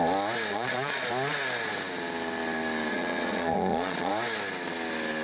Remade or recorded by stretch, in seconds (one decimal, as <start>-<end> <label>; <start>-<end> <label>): 0.0-0.5 recorded; 0.5-1.1 remade; 1.1-2.9 recorded; 2.9-4.1 remade; 4.1-5.2 recorded